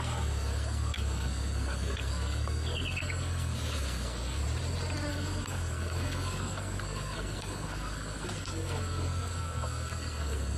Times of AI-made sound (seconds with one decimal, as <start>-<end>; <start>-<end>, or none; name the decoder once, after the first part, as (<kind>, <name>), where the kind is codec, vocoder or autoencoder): 0.0-4.4 (codec, SNAC); 5.1-10.6